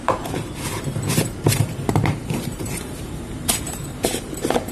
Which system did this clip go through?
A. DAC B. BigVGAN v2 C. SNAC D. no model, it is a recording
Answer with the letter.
B